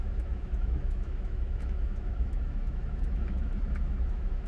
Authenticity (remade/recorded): remade